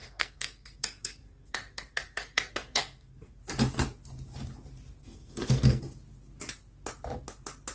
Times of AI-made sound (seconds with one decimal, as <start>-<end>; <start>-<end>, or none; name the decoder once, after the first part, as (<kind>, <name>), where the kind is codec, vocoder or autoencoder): 0.0-3.4 (codec, SNAC); 5.0-5.8

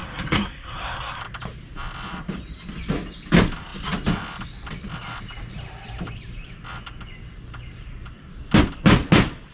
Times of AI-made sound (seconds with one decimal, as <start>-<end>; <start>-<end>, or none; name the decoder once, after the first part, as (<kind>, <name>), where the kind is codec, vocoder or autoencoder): 0.0-1.2 (codec, SNAC)

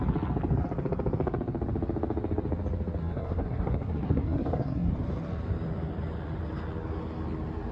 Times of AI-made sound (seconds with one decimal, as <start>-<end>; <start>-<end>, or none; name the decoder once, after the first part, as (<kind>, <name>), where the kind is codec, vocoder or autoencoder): 3.0-4.9 (codec, SNAC)

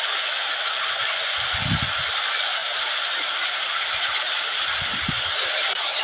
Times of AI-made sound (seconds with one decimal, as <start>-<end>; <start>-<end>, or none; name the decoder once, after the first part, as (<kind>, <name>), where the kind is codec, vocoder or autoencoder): none